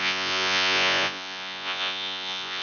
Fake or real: fake